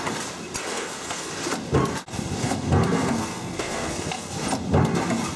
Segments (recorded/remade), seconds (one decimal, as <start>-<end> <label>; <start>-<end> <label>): 0.0-0.7 recorded; 0.7-1.3 remade; 1.3-2.4 recorded; 2.4-4.3 remade; 4.3-5.4 recorded